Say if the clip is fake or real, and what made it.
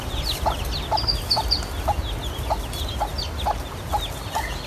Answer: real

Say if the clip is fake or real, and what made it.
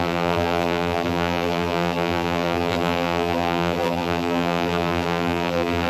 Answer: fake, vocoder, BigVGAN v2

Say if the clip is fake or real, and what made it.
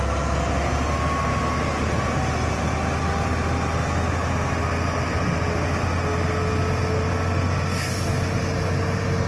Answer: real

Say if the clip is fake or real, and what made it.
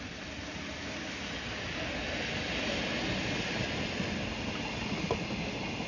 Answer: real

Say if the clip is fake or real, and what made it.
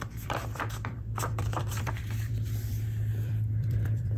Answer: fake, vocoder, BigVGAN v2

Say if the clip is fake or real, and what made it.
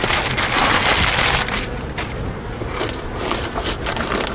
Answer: fake, vocoder, BigVGAN v2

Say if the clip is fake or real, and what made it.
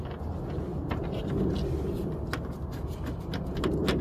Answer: real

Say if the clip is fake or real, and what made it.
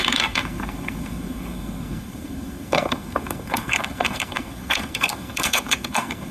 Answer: fake, codec, SNAC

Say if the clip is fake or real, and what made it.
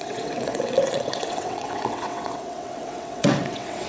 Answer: fake, vocoder, WaveNeXt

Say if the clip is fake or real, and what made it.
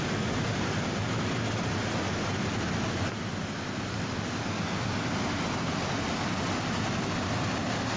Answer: real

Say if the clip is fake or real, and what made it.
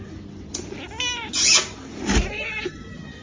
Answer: real